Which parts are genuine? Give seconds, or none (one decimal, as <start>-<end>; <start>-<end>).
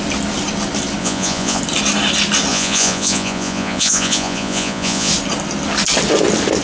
0.0-1.0; 1.6-2.5; 5.1-6.6